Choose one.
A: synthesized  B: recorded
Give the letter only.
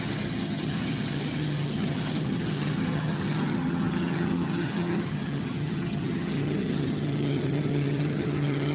A